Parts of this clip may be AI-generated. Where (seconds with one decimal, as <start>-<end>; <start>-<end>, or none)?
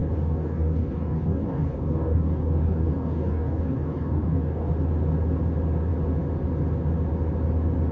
0.0-4.7